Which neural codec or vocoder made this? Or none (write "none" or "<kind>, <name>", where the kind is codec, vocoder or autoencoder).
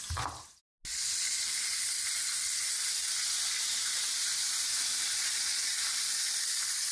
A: none